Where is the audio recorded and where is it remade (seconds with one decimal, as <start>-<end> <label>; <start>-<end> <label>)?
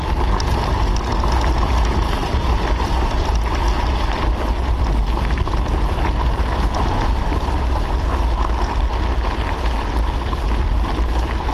0.0-2.2 recorded; 2.2-3.3 remade; 3.3-11.5 recorded